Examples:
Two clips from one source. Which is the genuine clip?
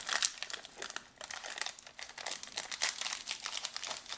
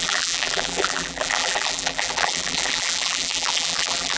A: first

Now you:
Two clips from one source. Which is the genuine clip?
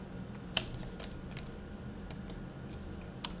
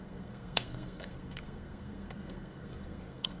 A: first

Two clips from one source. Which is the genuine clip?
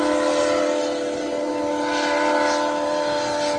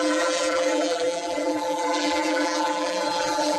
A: first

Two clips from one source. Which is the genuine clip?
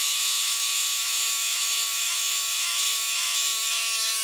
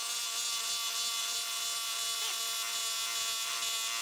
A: second